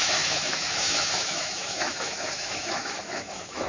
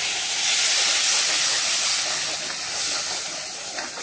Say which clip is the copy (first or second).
first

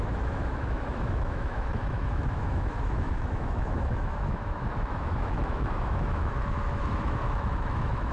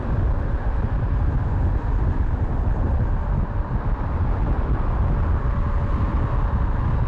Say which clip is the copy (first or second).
first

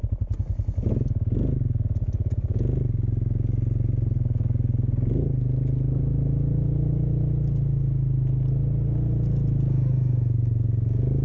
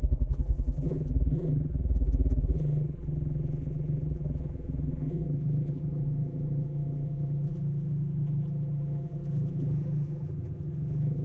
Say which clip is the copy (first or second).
second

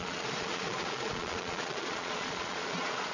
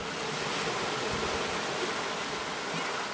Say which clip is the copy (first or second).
first